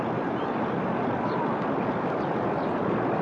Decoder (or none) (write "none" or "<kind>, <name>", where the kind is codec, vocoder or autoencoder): none